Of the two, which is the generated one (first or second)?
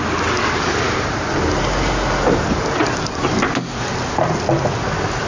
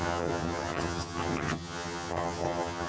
second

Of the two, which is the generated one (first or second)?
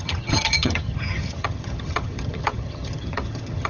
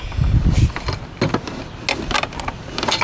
first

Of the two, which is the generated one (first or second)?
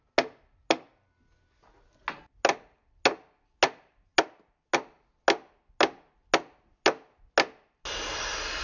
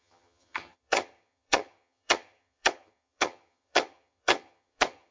second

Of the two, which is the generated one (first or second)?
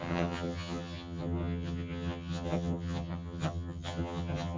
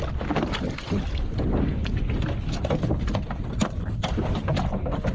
first